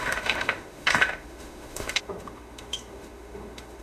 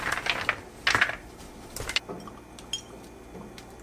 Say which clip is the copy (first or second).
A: first